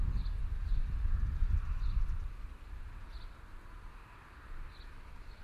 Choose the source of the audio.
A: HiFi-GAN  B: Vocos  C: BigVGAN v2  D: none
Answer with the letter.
D